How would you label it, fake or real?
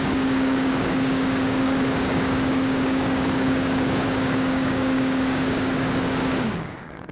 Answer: fake